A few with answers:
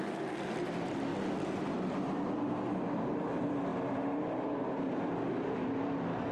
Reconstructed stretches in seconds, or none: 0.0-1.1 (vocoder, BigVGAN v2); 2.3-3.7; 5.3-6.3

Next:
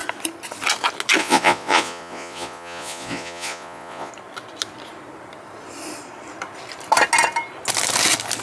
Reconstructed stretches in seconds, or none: 1.2-4.1 (vocoder, Vocos)

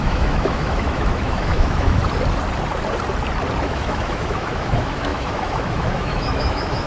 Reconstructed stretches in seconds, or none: 0.0-2.0 (autoencoder, DAC-VAE); 3.6-6.9

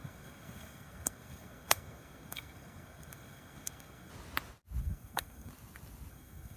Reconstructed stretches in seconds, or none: 0.0-4.1 (codec, SNAC); 4.8-5.5; 6.1-6.6

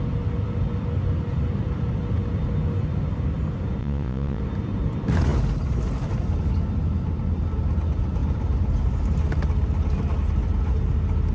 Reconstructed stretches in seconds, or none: 3.8-4.4 (vocoder, Vocos)